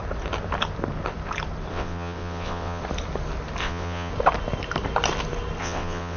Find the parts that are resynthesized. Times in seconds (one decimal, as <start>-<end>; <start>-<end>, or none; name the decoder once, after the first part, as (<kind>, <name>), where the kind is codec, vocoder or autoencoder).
1.7-2.8 (vocoder, WaveNeXt); 3.6-4.1; 5.6-6.2